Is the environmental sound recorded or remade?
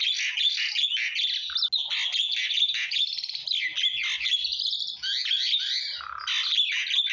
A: recorded